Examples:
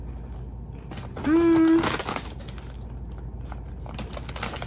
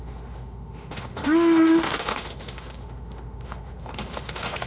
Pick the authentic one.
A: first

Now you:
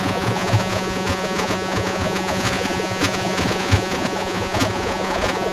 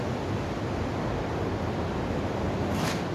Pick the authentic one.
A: second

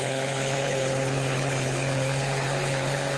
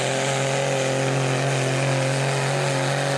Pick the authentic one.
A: second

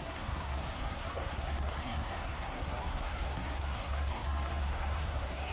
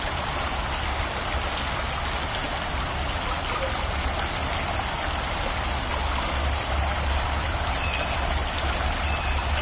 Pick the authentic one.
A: second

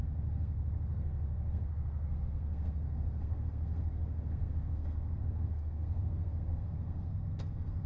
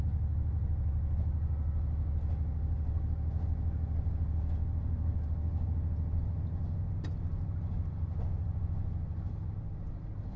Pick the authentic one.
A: second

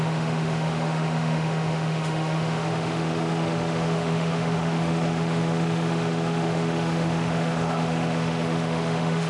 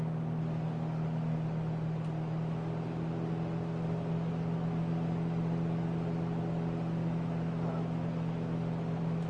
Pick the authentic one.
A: second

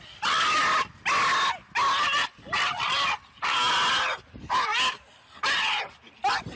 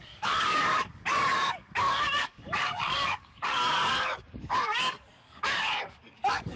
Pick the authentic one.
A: first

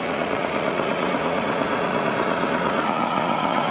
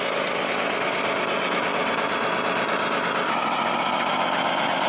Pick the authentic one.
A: second